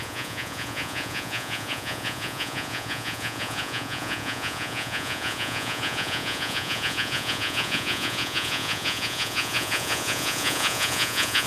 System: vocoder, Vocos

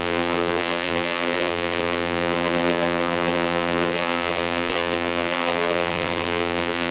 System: vocoder, BigVGAN v2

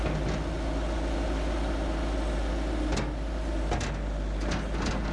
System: none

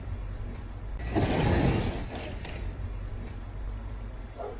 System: none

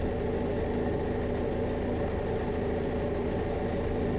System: none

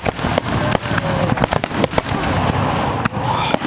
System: none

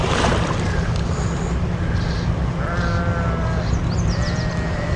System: none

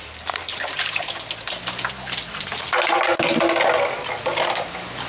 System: none